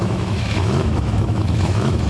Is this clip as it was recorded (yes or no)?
no